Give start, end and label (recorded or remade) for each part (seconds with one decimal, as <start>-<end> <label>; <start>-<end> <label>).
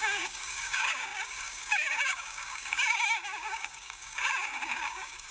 0.0-5.3 remade